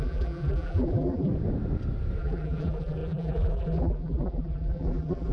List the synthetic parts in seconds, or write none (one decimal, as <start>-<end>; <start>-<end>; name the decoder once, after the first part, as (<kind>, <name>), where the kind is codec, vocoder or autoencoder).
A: 0.0-1.3 (vocoder, BigVGAN v2); 2.2-5.3